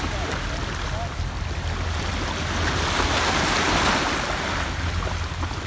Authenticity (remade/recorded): recorded